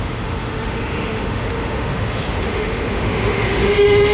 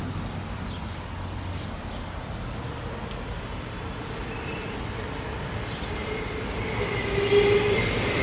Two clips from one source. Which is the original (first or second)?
second